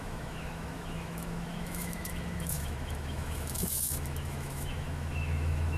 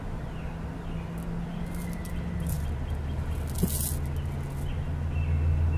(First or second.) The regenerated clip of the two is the first